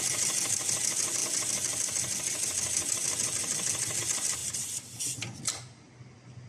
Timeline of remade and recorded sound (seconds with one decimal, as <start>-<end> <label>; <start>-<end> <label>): 0.0-6.5 recorded